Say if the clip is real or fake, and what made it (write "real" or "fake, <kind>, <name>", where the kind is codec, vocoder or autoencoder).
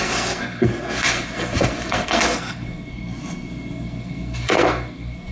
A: fake, codec, SNAC